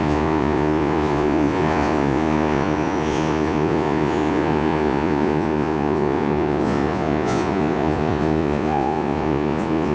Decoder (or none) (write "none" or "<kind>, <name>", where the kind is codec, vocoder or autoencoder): vocoder, Vocos